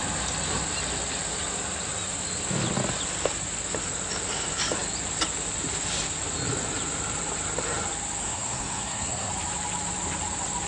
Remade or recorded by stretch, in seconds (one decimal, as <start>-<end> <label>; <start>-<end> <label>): 0.0-8.2 recorded; 8.2-9.3 remade; 9.3-10.7 recorded